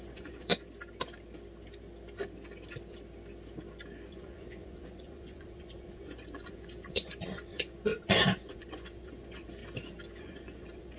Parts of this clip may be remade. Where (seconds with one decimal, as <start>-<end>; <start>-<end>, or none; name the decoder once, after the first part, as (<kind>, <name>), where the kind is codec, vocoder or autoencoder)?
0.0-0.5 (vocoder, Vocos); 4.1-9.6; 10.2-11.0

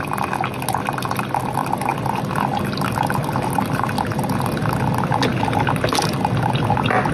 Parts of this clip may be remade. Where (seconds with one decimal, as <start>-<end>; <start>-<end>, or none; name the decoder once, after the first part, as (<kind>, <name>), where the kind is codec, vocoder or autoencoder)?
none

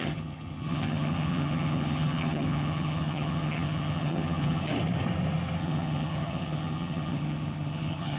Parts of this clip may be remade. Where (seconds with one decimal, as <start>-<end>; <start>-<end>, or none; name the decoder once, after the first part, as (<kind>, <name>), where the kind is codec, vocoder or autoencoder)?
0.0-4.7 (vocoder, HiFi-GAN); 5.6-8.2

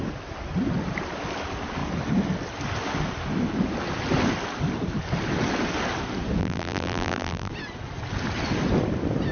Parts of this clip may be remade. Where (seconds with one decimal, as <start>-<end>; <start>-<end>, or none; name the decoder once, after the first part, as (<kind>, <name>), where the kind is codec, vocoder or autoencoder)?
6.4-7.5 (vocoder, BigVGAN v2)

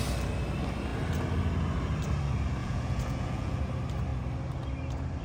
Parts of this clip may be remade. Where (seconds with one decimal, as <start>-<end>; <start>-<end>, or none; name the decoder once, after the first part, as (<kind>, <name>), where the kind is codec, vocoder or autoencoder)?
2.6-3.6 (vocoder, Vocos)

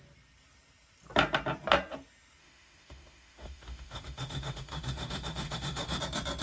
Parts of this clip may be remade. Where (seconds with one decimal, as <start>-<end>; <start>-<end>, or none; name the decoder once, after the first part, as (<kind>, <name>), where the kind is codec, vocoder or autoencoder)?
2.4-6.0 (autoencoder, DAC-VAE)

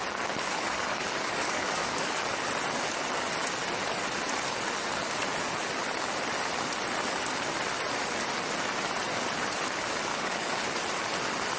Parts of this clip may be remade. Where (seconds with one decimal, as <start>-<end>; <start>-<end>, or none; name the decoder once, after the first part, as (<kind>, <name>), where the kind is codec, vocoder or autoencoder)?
0.5-2.2 (codec, DAC); 10.1-10.6

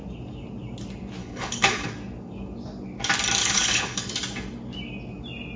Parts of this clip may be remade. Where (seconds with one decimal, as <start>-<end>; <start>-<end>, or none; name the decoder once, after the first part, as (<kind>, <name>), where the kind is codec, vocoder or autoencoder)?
1.2-1.9 (codec, HILCodec); 3.4-4.1